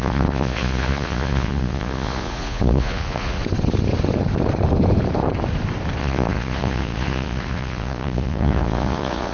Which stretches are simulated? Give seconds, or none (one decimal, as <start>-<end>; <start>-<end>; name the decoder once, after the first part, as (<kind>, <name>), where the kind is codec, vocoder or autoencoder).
0.0-3.4 (vocoder, Vocos); 6.0-9.3